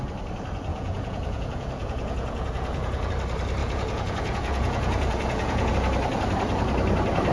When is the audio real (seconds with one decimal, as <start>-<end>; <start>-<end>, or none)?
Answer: 0.0-0.7; 3.1-3.6; 5.7-7.3